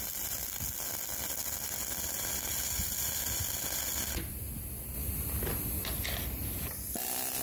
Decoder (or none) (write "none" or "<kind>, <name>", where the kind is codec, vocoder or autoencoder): none